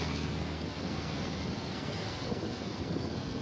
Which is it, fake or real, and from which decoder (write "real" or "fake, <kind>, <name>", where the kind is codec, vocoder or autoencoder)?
fake, codec, SNAC